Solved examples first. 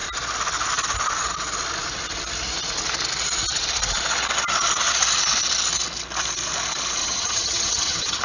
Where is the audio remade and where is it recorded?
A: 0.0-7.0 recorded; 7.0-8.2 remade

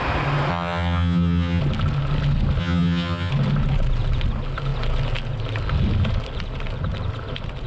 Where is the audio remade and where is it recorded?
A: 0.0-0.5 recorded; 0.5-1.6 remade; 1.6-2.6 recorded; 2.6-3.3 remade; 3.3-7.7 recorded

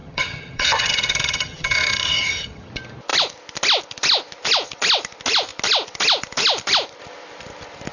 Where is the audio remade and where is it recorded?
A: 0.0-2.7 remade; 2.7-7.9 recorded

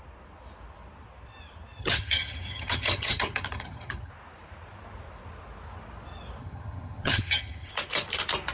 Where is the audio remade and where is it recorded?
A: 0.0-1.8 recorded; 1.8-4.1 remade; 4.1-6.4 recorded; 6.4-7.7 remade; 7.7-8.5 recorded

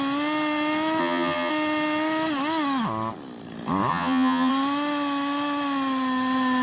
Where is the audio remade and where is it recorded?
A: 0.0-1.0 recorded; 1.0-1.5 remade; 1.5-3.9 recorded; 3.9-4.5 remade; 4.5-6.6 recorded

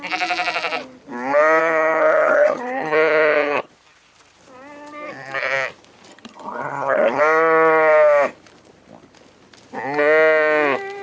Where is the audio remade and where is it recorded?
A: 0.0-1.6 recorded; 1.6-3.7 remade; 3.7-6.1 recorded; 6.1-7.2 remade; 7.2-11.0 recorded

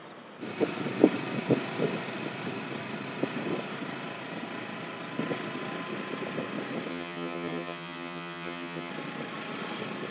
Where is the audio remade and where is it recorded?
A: 0.0-6.9 recorded; 6.9-8.9 remade; 8.9-10.1 recorded

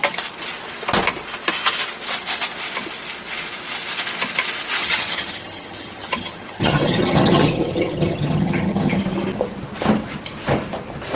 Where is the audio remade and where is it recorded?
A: 0.0-4.8 recorded; 4.8-9.0 remade; 9.0-11.2 recorded